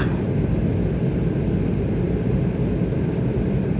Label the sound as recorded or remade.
recorded